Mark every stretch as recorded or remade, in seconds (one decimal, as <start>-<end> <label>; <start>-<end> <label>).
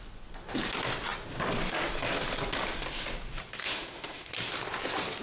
0.0-3.6 recorded; 3.6-4.3 remade; 4.3-5.2 recorded